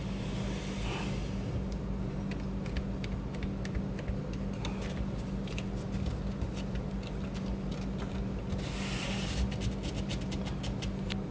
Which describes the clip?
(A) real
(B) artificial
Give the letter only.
A